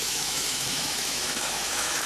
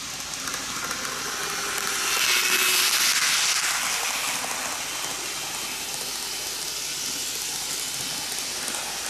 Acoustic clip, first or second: second